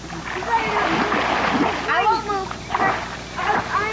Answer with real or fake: real